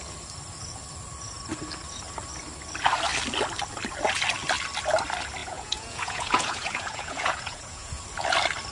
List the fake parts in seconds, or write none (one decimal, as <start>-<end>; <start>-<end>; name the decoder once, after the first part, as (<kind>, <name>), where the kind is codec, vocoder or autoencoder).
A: 5.4-8.0 (vocoder, Vocos)